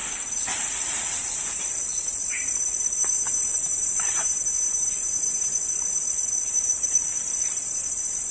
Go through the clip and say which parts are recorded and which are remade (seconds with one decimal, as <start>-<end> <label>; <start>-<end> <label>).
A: 0.0-3.1 remade; 3.1-5.5 recorded; 5.5-7.7 remade; 7.7-8.3 recorded